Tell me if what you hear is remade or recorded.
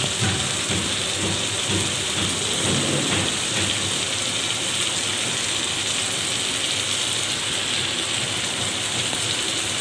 recorded